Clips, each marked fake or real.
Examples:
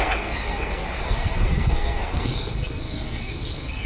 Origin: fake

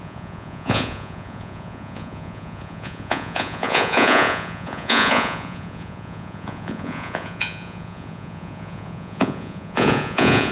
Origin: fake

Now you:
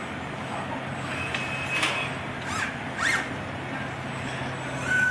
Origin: real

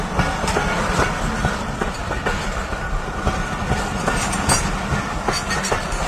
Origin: real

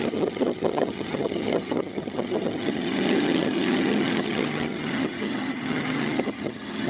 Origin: fake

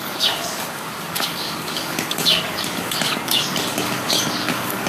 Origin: fake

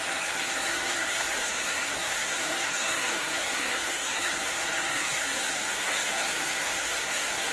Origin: fake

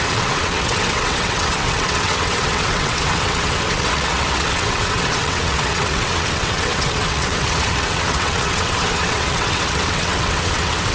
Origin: fake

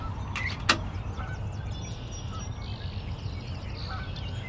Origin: real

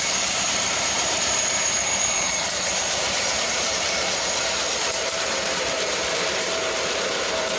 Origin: fake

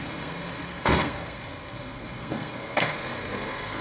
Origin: fake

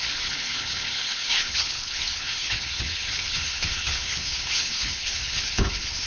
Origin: fake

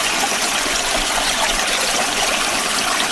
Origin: fake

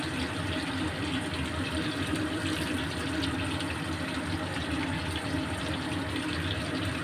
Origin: real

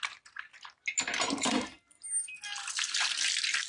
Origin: real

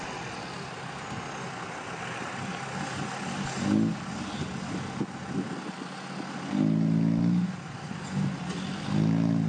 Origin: real